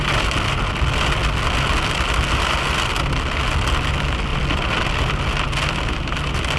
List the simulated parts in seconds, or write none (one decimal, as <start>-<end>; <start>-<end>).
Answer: none